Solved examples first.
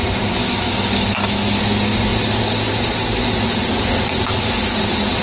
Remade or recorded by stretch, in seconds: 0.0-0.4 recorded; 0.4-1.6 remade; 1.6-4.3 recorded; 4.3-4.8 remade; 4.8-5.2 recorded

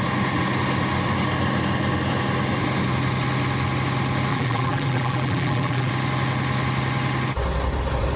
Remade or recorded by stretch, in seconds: 0.0-4.3 recorded; 4.3-5.9 remade; 5.9-8.2 recorded

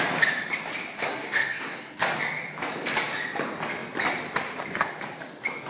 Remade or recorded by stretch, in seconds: 0.0-1.0 recorded; 1.0-2.0 remade; 2.0-5.7 recorded